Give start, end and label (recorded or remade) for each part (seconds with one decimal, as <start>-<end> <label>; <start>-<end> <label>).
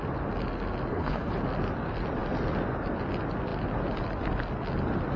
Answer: 0.0-0.9 recorded; 0.9-1.4 remade; 1.4-5.2 recorded